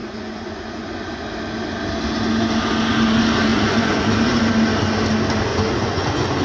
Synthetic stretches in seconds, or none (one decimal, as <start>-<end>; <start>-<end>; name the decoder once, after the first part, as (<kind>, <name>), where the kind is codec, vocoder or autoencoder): 0.0-1.2 (vocoder, Vocos); 3.5-4.2; 5.5-6.4

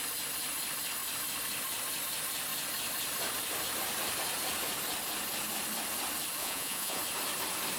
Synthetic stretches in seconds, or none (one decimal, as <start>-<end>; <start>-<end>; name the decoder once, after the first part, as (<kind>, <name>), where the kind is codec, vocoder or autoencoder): 6.4-7.0 (vocoder, Vocos)

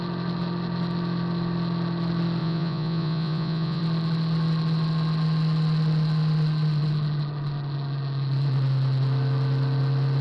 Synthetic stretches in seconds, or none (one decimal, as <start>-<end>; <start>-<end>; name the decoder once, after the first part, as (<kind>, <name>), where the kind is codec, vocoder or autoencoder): 2.4-3.8 (vocoder, Vocos)

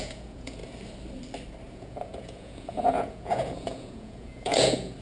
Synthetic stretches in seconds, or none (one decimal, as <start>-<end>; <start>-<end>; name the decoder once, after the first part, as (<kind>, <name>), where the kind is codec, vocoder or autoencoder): 0.0-0.6 (vocoder, Vocos); 1.7-5.0

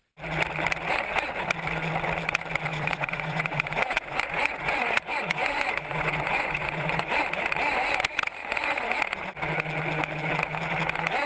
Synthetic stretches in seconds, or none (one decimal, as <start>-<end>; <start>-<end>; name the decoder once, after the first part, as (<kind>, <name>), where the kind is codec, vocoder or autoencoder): 2.7-7.1 (vocoder, Vocos); 8.4-9.0